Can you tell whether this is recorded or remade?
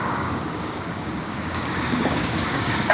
remade